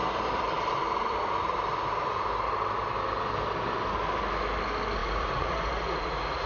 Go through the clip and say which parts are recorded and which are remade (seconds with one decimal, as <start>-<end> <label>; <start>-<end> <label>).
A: 0.0-5.0 recorded; 5.0-6.5 remade